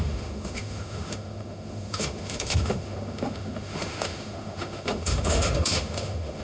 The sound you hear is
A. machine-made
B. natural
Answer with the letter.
A